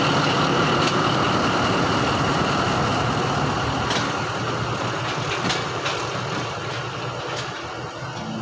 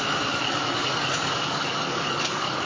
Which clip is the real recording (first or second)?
first